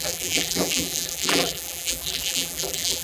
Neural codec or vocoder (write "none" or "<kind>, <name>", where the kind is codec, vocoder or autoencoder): vocoder, BigVGAN v2